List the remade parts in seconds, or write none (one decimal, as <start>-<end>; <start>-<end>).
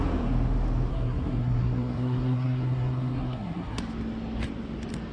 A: 0.9-3.8